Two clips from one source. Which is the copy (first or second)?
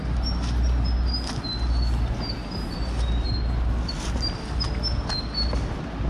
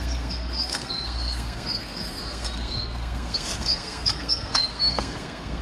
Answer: second